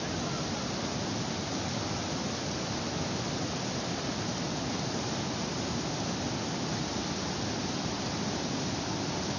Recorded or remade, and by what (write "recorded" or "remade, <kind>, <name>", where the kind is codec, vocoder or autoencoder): recorded